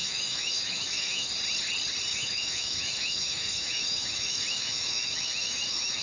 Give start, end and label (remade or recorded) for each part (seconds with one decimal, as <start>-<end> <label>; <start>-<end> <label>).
0.0-1.3 remade; 1.3-2.1 recorded; 2.1-6.0 remade